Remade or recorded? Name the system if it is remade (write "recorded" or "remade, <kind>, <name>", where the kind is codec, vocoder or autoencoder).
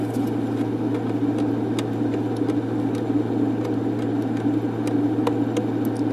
recorded